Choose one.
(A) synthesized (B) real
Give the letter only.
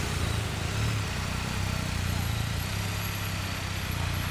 B